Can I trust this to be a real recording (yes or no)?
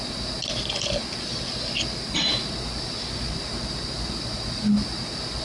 yes